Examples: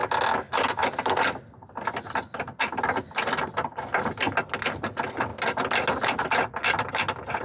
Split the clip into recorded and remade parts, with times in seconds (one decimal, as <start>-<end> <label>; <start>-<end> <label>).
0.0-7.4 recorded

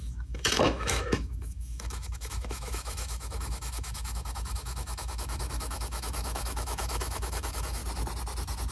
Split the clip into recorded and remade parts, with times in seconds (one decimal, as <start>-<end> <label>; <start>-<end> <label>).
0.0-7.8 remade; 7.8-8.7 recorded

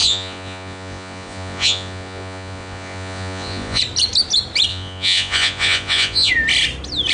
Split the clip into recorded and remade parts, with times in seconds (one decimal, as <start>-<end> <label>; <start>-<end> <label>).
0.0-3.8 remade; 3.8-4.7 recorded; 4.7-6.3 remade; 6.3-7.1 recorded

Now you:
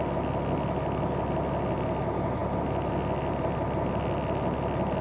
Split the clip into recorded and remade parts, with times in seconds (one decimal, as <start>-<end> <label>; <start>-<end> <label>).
0.0-5.0 recorded

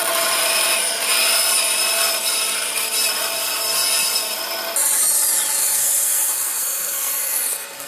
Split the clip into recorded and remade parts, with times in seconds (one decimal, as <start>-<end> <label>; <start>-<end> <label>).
0.0-5.6 recorded; 5.6-7.9 remade

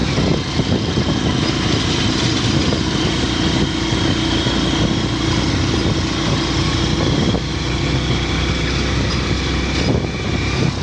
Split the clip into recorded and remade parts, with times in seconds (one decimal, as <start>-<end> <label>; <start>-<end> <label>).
0.0-10.8 recorded

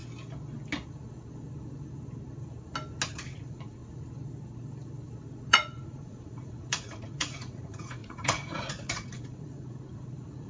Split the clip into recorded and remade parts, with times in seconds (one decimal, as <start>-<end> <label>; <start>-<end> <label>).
0.0-3.1 recorded; 3.1-3.8 remade; 3.8-5.5 recorded; 5.5-10.5 remade

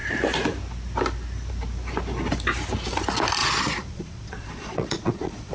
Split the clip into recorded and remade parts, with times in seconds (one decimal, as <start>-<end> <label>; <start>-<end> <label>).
0.0-3.4 recorded; 3.4-5.5 remade